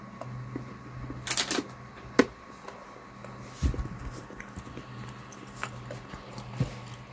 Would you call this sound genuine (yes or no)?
yes